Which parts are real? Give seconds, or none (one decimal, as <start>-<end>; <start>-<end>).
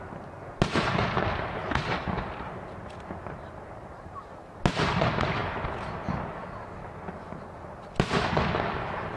0.0-9.2